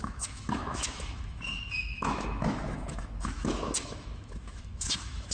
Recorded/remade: remade